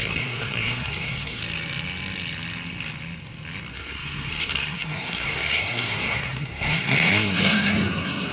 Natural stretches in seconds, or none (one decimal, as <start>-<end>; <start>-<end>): 1.4-3.7